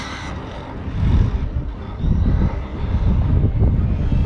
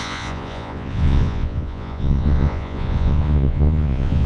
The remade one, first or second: second